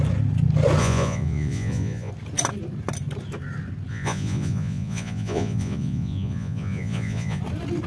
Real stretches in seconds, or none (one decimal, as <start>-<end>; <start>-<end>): 0.0-0.8; 2.1-3.9; 7.4-7.9

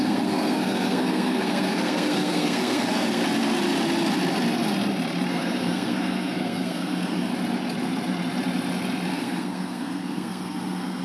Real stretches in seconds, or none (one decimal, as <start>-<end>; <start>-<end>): 3.2-5.3; 7.3-9.1

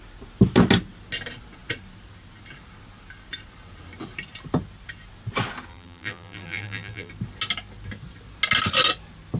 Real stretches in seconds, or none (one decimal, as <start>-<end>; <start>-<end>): 0.0-5.7; 7.1-9.4

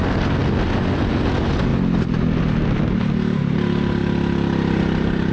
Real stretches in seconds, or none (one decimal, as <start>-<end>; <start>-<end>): 0.0-5.3

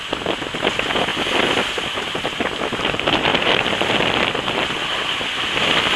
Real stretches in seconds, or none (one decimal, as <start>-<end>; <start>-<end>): 0.0-6.0

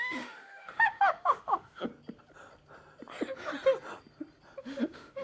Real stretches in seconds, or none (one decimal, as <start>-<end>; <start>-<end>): 1.9-4.6

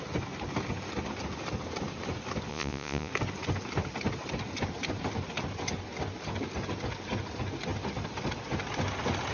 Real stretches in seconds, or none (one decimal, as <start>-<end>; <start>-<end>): 0.0-2.5; 3.1-9.3

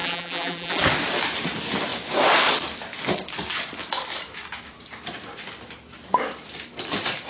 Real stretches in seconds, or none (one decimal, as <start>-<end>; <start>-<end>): 0.8-7.3